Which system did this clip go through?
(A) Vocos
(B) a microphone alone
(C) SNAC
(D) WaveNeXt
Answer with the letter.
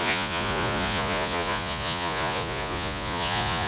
A